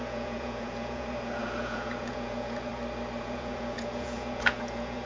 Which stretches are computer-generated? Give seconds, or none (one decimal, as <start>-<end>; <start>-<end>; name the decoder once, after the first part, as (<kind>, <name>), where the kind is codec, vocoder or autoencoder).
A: 0.0-2.7 (vocoder, Vocos); 3.2-5.1